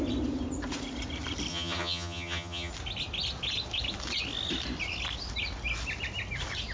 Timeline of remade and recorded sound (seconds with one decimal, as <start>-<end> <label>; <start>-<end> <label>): 0.0-1.5 recorded; 1.5-2.7 remade; 2.7-6.7 recorded